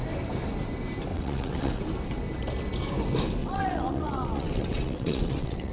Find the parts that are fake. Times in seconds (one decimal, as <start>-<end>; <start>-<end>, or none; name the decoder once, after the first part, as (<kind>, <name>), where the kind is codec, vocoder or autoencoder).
1.1-1.8 (vocoder, WaveNeXt); 3.4-5.7